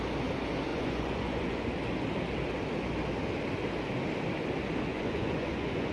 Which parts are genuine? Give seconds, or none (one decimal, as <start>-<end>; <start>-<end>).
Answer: 0.0-0.7; 1.7-4.9